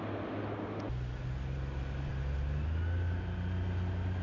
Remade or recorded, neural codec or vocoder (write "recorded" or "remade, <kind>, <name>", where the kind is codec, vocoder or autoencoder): recorded